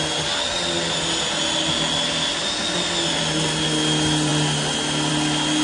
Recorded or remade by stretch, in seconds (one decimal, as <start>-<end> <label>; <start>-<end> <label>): 0.0-5.6 recorded